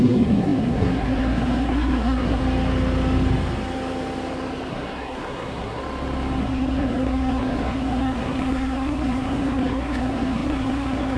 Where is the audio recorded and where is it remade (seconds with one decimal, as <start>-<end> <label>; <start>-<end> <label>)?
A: 0.0-2.4 remade; 2.4-4.7 recorded; 4.7-5.8 remade; 5.8-6.4 recorded; 6.4-11.2 remade